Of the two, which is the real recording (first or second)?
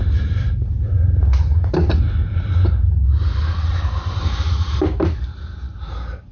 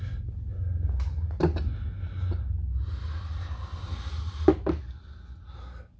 second